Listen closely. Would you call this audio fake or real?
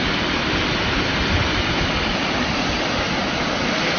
fake